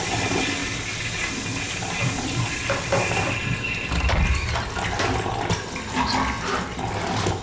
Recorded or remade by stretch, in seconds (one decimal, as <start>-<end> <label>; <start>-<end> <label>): 0.0-0.6 recorded; 0.6-1.3 remade; 1.3-2.0 recorded; 2.0-5.5 remade; 5.5-7.4 recorded